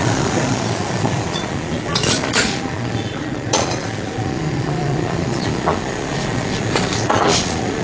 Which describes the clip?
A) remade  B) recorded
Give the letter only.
A